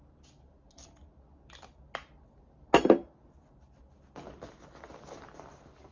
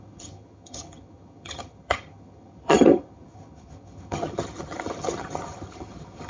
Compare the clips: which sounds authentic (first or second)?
first